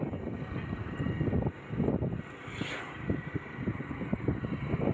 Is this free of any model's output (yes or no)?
yes